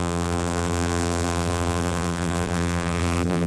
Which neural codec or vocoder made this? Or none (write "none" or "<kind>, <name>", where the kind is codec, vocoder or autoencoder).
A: vocoder, BigVGAN v2